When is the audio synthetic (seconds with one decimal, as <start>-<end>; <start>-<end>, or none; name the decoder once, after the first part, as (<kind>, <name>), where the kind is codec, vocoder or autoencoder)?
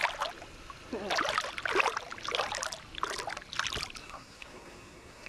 4.0-5.3 (codec, SNAC)